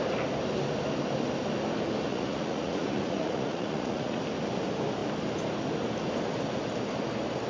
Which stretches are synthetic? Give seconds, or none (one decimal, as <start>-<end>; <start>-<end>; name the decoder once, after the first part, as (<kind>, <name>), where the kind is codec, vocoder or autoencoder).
2.1-4.2 (vocoder, Vocos)